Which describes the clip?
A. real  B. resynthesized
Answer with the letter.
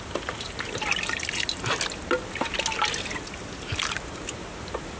A